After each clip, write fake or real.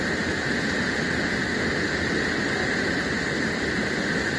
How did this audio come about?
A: real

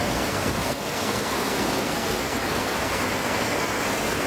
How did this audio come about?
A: fake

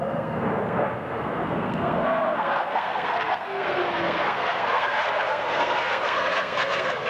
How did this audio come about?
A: fake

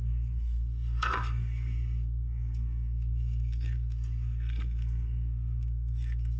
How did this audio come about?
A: fake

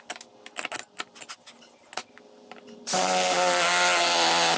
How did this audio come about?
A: real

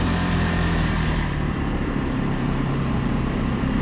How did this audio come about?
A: fake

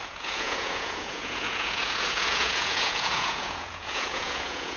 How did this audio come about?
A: fake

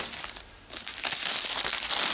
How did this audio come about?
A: real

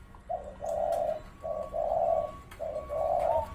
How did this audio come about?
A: real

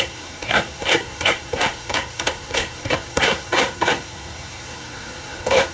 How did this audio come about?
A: fake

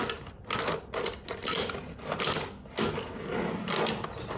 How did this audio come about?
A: real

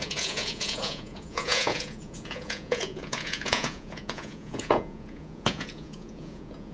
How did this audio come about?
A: fake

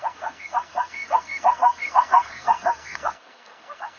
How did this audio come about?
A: fake